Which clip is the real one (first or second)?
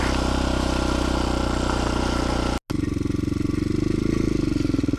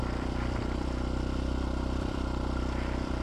first